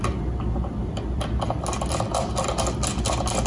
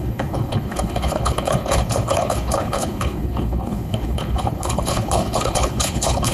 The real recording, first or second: first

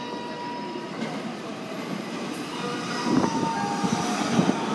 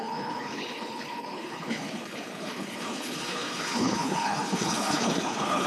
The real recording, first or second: first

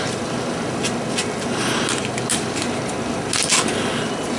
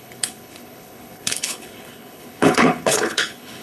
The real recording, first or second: first